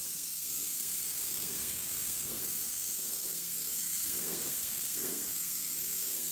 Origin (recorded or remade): remade